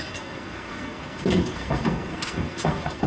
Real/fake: fake